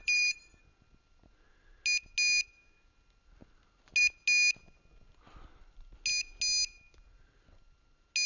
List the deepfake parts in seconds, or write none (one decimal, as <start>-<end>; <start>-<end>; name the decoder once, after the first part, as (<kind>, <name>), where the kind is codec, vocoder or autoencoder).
0.0-0.6 (autoencoder, DAC-VAE)